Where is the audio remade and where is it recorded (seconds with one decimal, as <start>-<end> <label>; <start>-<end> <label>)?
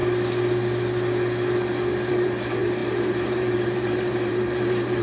0.0-2.1 recorded; 2.1-5.0 remade